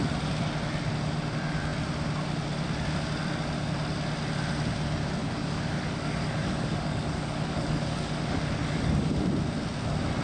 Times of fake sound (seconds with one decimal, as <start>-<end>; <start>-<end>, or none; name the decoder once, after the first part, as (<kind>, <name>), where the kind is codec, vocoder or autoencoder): 5.2-9.2 (codec, DAC)